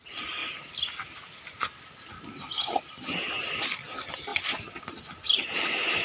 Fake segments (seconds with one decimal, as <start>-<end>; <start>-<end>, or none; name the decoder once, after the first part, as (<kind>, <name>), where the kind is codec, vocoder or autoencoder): none